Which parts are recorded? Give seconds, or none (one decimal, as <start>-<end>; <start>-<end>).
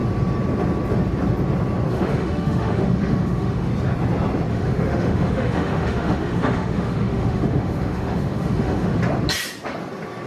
0.0-1.9; 3.7-4.5; 9.0-10.3